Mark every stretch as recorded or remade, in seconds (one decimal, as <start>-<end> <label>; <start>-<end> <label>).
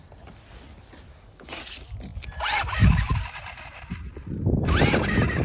0.0-1.1 recorded; 1.1-1.6 remade; 1.6-5.4 recorded